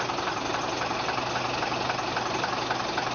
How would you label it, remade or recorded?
recorded